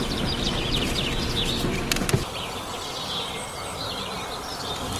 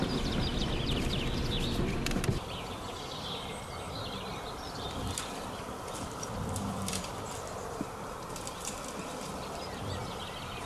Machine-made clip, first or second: second